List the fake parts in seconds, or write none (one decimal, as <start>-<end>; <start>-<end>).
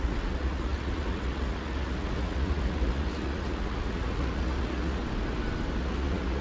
0.0-5.0; 5.8-6.4